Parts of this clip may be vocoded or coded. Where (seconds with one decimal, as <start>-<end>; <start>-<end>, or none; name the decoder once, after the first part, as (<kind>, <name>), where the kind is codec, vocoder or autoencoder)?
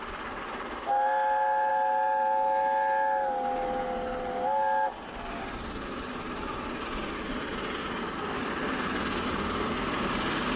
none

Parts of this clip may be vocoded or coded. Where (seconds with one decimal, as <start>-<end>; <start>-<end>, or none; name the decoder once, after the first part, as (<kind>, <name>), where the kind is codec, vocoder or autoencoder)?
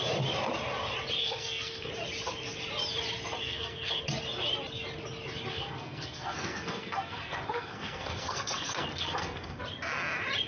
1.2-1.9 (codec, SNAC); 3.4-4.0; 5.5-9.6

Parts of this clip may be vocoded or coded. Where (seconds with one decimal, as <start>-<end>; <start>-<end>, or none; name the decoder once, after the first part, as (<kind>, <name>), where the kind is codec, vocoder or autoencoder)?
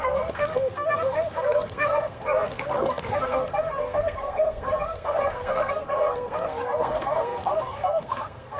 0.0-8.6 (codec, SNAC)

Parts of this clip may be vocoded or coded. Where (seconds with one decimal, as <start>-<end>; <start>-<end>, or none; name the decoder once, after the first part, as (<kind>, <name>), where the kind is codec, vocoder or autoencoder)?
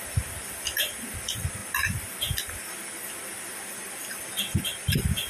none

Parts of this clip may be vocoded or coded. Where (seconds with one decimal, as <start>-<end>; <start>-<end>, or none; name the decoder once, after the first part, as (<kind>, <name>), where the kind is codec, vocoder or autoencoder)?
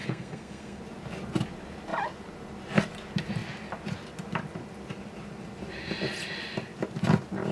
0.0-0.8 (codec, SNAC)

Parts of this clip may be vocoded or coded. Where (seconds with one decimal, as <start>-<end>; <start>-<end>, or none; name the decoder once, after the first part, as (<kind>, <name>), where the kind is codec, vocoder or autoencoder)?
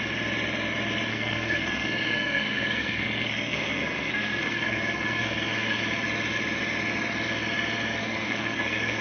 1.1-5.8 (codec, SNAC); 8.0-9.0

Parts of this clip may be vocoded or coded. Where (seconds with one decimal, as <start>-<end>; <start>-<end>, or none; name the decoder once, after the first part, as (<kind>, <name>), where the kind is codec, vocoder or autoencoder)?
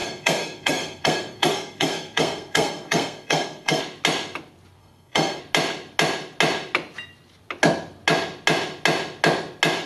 0.0-3.8 (codec, SNAC); 4.8-5.4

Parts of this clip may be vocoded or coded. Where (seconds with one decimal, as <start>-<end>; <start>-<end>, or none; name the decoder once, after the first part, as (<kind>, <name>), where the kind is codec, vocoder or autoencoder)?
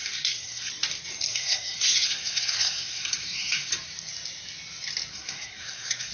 0.0-0.7 (codec, SNAC); 1.3-3.7; 5.1-6.1